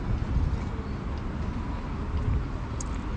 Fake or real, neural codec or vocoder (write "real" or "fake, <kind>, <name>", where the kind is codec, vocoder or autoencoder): real